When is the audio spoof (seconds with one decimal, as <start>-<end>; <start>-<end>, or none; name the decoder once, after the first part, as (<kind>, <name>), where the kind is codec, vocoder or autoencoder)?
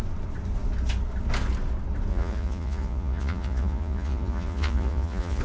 2.1-5.4 (vocoder, Vocos)